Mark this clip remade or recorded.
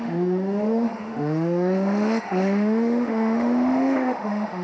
remade